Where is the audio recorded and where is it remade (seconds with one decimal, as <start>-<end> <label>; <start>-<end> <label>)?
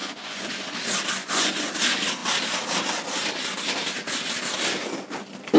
0.0-0.5 remade; 0.5-1.2 recorded; 1.2-1.7 remade; 1.7-5.6 recorded